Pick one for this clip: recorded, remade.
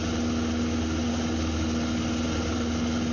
recorded